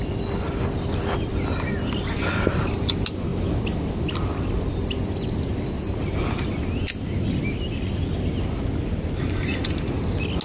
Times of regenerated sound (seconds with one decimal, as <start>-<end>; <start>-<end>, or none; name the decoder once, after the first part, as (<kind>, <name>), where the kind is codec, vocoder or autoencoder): none